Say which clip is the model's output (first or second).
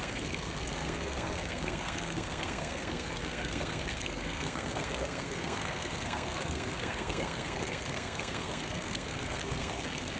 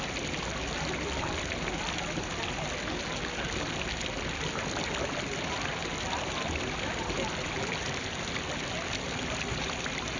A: first